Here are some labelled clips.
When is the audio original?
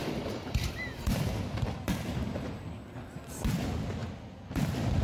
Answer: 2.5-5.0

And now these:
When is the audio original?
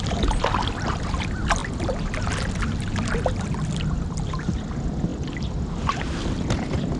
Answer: 1.6-4.3